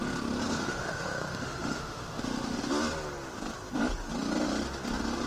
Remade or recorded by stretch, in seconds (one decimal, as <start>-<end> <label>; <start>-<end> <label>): 0.0-0.6 recorded; 0.6-2.7 remade; 2.7-5.3 recorded

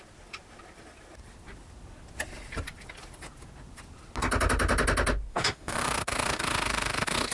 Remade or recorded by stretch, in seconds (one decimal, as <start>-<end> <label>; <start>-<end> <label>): 0.0-5.3 recorded; 5.3-7.3 remade

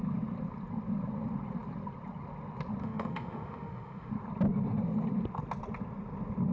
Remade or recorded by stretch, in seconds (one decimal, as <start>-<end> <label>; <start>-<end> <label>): 0.0-2.8 recorded; 2.8-4.1 remade; 4.1-6.5 recorded

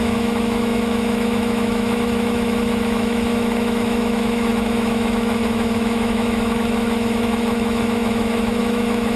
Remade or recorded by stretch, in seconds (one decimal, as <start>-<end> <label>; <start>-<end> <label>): 0.0-9.2 remade